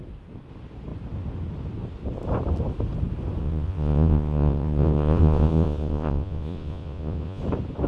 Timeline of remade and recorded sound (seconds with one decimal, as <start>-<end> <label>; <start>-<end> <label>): 0.0-3.4 recorded; 3.4-7.4 remade; 7.4-7.9 recorded